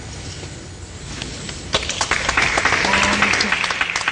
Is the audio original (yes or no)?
yes